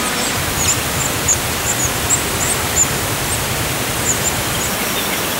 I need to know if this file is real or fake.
real